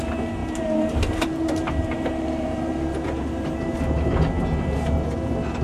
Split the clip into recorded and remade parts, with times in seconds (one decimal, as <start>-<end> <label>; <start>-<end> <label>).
0.0-0.4 recorded; 0.4-3.8 remade; 3.8-5.6 recorded